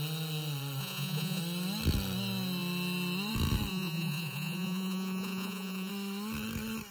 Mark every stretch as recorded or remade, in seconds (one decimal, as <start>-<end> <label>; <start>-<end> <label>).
0.0-0.8 recorded; 0.8-1.4 remade; 1.4-3.7 recorded; 3.7-5.9 remade; 5.9-6.9 recorded